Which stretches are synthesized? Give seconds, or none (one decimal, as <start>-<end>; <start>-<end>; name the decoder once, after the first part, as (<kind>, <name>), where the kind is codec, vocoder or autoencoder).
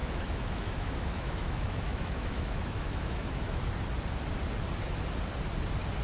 0.0-3.6 (autoencoder, DAC-VAE)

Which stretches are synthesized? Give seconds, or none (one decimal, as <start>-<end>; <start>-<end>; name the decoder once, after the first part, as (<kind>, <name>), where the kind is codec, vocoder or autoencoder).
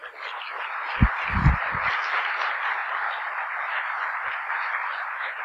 none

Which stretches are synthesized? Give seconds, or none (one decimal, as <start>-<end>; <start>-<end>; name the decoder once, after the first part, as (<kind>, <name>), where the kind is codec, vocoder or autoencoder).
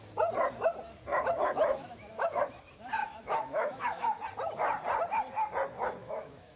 1.1-2.6 (autoencoder, DAC-VAE); 3.0-4.2; 6.0-6.6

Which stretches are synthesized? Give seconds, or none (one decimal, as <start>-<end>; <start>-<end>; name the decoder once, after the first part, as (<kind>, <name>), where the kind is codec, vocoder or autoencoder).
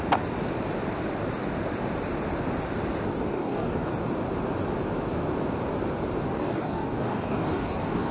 3.3-3.9 (codec, DAC); 6.3-8.1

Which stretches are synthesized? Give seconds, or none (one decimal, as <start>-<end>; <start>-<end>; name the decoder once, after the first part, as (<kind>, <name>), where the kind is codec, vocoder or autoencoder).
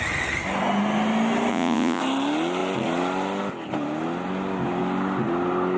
1.5-2.0 (vocoder, Vocos)